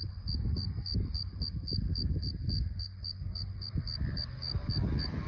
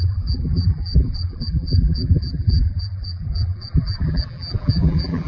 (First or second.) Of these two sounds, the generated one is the second